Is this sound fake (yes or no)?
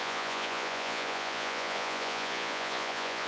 yes